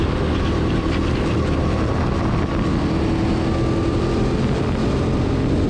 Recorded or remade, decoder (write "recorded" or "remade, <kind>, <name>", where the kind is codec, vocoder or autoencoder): recorded